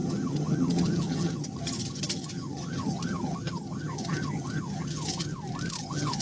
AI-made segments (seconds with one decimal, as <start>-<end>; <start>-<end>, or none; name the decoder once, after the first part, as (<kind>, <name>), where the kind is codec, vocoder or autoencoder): 0.0-5.3 (vocoder, HiFi-GAN); 5.8-6.2